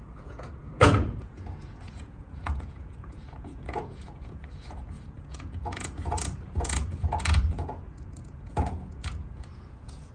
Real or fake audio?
fake